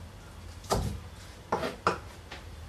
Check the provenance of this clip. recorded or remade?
recorded